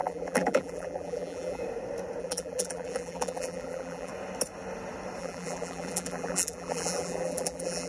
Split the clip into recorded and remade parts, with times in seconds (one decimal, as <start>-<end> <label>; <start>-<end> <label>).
0.0-1.6 remade; 1.6-2.2 recorded; 2.2-4.1 remade; 4.1-5.2 recorded; 5.2-7.9 remade